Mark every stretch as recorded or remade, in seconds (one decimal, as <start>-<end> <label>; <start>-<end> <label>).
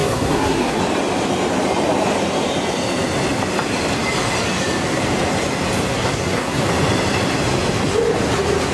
0.0-0.8 remade; 0.8-5.9 recorded; 5.9-6.6 remade; 6.6-8.7 recorded